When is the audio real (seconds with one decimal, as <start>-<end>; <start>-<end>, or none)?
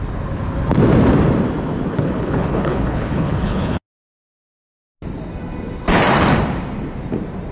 0.0-1.9; 3.8-7.5